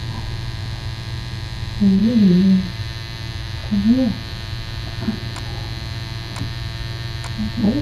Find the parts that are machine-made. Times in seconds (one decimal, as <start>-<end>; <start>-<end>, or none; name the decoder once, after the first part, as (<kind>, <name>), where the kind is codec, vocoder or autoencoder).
2.0-2.8 (vocoder, BigVGAN v2)